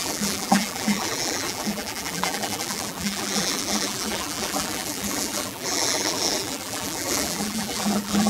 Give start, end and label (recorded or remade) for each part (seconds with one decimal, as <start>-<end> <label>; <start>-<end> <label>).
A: 0.0-8.3 remade

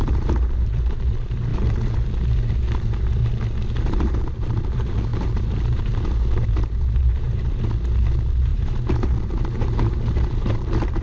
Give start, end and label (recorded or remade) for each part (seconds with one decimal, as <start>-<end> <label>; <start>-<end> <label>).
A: 0.0-1.5 remade; 1.5-2.8 recorded; 2.8-3.2 remade; 3.2-3.8 recorded; 3.8-11.0 remade

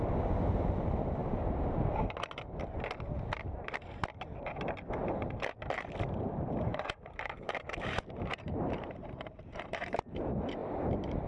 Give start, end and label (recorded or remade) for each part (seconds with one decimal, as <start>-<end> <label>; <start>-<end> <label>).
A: 0.0-1.2 recorded; 1.2-2.1 remade; 2.1-6.7 recorded; 6.7-10.0 remade; 10.0-10.6 recorded; 10.6-11.3 remade

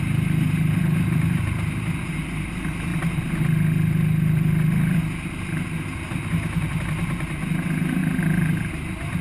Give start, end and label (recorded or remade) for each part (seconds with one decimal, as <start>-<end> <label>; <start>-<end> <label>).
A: 0.0-9.2 recorded

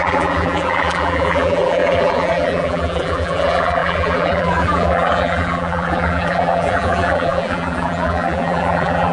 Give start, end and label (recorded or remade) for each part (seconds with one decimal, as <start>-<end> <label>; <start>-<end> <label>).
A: 0.0-9.1 remade

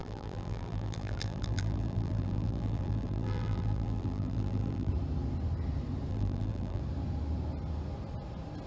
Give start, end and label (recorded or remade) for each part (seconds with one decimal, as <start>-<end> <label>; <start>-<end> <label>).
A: 0.0-4.9 remade; 4.9-6.1 recorded; 6.1-6.8 remade; 6.8-8.7 recorded

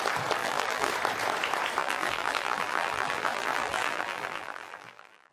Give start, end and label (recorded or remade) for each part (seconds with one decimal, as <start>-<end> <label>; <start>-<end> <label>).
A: 0.0-0.4 recorded; 0.4-0.9 remade; 0.9-1.8 recorded; 1.8-5.3 remade